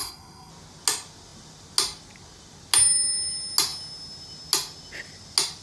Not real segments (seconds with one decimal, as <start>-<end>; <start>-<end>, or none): 0.0-0.5